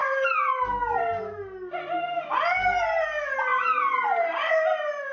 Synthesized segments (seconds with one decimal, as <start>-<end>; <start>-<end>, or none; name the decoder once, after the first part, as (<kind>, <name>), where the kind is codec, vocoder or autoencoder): 3.5-4.5 (vocoder, BigVGAN v2)